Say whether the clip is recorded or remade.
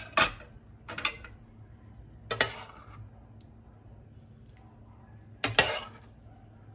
recorded